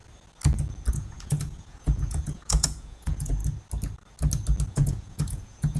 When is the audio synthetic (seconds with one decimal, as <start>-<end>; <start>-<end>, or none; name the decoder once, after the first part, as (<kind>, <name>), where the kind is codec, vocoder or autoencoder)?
0.9-3.4 (vocoder, Vocos); 4.7-5.8